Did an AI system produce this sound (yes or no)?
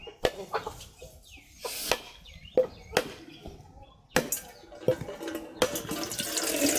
no